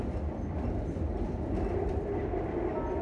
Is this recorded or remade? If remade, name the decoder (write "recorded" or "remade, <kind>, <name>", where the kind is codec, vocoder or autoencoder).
recorded